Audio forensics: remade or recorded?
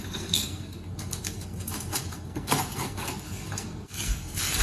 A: remade